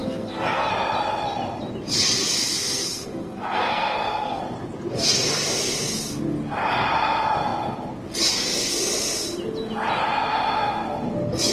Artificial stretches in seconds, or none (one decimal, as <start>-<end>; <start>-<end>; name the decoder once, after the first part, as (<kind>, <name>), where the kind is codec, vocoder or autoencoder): 0.0-0.7 (codec, SNAC); 2.4-4.4